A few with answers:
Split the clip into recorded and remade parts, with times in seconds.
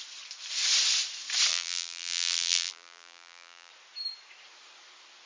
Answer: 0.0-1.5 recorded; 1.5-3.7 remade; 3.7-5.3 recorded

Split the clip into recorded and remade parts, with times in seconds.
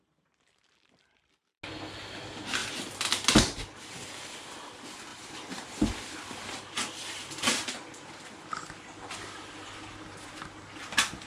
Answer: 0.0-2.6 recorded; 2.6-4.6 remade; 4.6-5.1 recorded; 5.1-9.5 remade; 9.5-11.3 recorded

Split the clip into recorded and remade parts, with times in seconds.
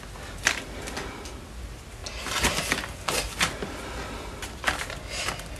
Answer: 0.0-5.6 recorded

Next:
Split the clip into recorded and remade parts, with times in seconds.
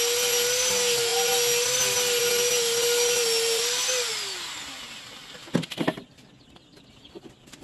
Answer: 0.0-7.6 recorded